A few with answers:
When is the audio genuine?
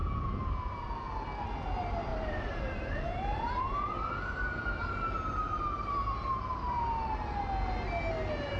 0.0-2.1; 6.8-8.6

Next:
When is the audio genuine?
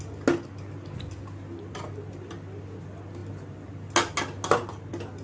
0.0-5.2